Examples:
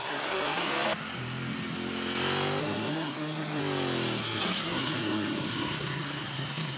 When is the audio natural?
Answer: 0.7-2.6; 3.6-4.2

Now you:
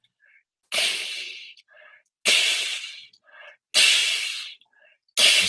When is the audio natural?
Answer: 0.0-4.0; 4.6-5.5

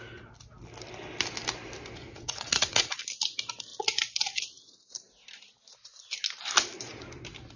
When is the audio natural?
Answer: 0.0-2.0; 3.0-7.6

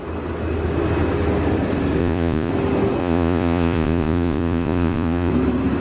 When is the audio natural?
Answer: 0.0-2.0; 2.5-3.0; 5.3-5.8